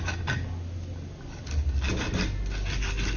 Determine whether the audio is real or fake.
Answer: real